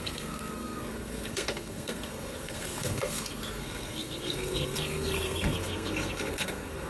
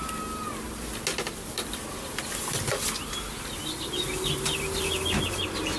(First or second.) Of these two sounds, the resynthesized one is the first